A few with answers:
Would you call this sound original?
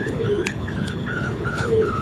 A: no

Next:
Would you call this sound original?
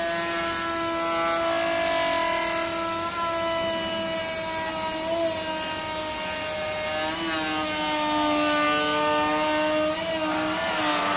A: yes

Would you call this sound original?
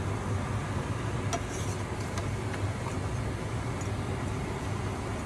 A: yes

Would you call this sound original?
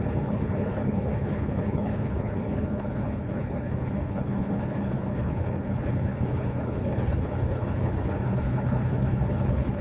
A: no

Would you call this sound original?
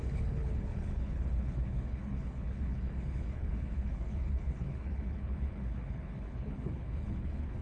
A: no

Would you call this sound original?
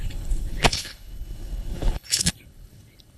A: no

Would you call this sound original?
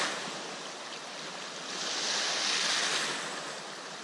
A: yes